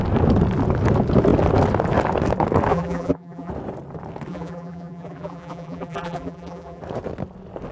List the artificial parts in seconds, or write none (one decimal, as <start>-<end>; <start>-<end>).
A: 2.7-3.5; 4.3-6.8